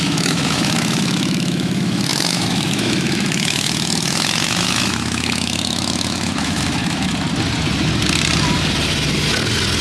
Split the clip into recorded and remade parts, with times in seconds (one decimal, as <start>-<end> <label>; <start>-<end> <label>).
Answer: 0.0-7.1 remade; 7.1-9.8 recorded